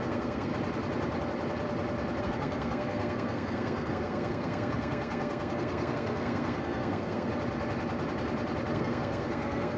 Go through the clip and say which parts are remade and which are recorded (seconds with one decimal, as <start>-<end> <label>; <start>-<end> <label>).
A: 0.0-0.5 remade; 0.5-2.2 recorded; 2.2-7.3 remade; 7.3-8.7 recorded; 8.7-9.8 remade